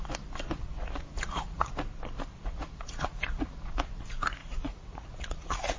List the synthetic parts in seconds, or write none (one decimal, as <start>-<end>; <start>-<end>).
0.6-1.7; 2.3-3.9; 4.4-5.8